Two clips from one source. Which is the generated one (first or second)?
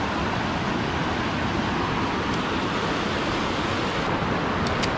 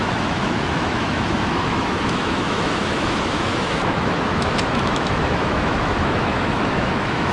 second